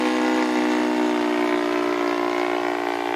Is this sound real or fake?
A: real